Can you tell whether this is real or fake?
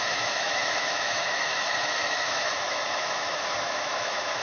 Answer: fake